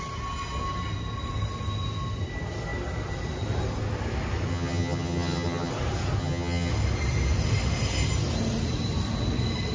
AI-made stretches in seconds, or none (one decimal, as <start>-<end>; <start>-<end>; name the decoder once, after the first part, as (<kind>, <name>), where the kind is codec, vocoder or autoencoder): 4.5-5.7 (vocoder, HiFi-GAN); 6.2-6.7